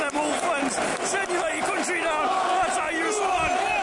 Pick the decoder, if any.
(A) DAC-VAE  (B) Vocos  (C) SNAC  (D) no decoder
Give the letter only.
D